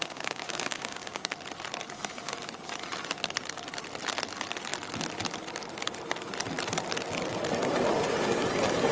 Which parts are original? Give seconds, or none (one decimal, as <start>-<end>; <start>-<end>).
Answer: 1.3-8.9